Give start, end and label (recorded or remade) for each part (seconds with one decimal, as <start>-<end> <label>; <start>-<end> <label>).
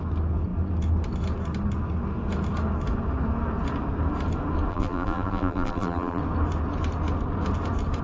0.0-4.7 recorded; 4.7-6.2 remade; 6.2-8.0 recorded